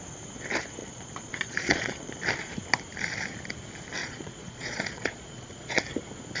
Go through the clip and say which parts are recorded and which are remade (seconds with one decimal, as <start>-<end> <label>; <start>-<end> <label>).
0.0-0.8 recorded; 0.8-2.1 remade; 2.1-4.0 recorded; 4.0-5.8 remade; 5.8-6.4 recorded